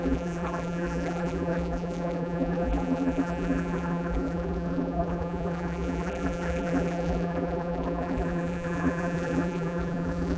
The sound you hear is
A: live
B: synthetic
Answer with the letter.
B